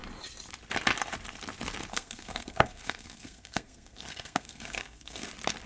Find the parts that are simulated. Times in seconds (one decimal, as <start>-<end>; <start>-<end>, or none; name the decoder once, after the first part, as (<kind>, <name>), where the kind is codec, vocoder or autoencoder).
1.9-5.3 (codec, SNAC)